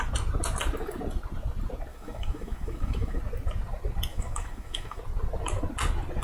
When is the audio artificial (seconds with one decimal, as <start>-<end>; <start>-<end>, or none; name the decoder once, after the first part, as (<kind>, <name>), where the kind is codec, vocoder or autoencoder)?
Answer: 1.9-3.2 (autoencoder, DAC-VAE); 4.1-5.0